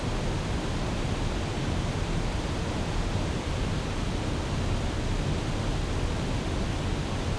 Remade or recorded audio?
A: recorded